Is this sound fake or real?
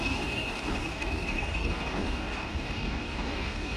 fake